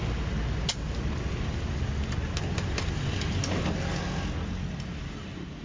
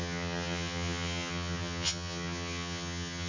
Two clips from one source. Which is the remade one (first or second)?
second